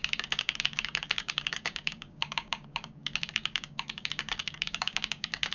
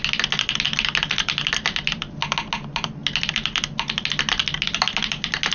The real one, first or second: second